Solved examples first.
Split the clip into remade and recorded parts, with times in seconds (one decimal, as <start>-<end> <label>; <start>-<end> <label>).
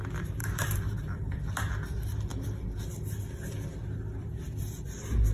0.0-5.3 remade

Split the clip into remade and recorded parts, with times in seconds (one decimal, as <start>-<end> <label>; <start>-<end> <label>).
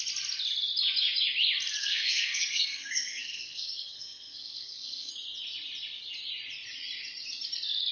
0.0-1.8 recorded; 1.8-5.1 remade; 5.1-7.9 recorded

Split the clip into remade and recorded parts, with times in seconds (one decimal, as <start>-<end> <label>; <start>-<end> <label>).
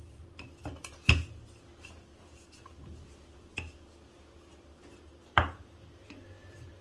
0.0-6.8 recorded